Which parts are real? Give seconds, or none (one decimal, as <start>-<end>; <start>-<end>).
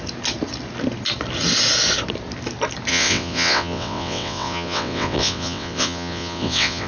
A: 0.0-2.9